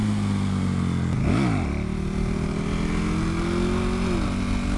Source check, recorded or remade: recorded